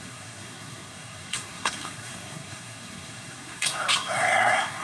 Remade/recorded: remade